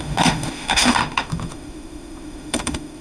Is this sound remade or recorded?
remade